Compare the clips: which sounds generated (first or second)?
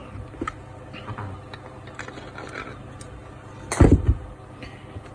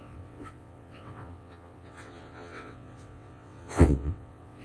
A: second